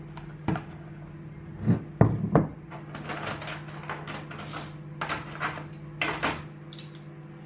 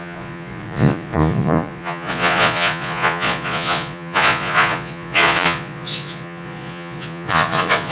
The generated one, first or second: second